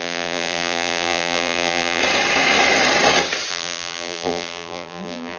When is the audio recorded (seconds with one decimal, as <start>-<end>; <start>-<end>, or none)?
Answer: 2.0-3.5